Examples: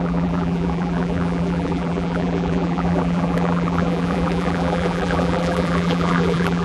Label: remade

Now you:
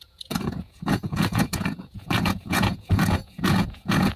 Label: remade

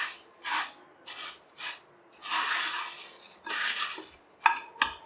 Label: recorded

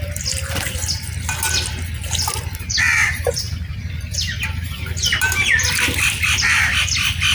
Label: recorded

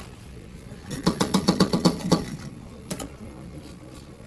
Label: remade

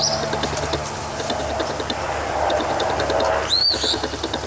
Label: recorded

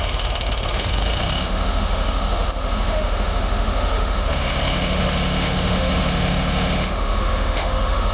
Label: remade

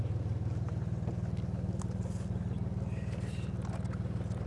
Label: recorded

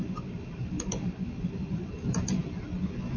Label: recorded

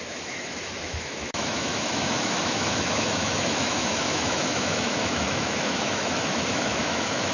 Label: remade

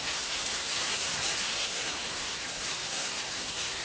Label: remade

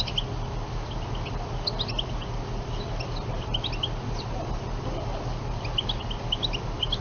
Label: recorded